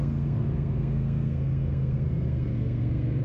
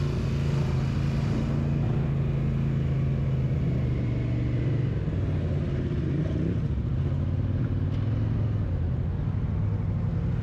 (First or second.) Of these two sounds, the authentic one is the second